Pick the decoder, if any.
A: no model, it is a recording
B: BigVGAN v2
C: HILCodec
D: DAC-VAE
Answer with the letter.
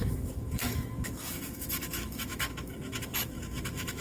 D